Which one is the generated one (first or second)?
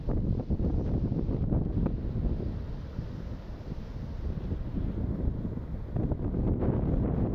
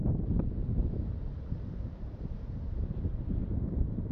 second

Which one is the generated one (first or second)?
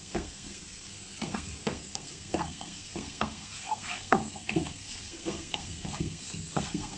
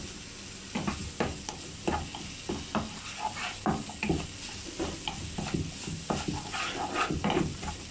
first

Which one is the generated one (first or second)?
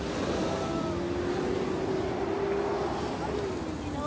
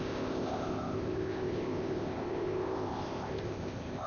second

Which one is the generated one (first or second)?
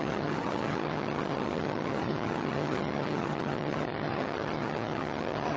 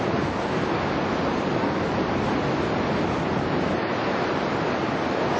first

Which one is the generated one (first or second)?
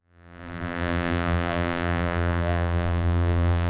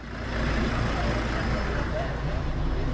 first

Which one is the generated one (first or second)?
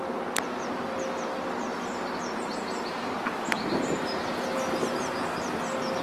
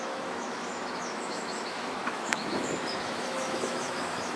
second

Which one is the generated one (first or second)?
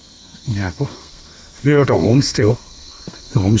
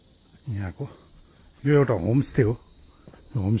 first